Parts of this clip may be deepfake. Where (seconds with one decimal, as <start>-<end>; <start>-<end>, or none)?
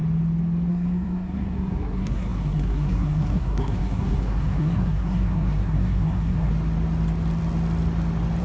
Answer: 0.7-6.5